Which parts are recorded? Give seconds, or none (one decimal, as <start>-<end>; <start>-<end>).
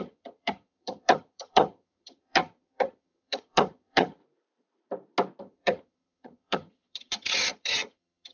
4.2-5.4